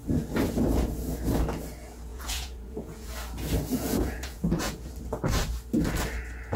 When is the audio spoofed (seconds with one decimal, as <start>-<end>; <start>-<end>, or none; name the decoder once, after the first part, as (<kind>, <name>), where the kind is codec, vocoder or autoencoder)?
2.1-3.1 (vocoder, Vocos); 3.7-4.9